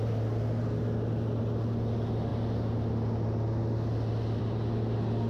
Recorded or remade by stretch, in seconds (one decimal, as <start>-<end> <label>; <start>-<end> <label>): 0.0-5.3 recorded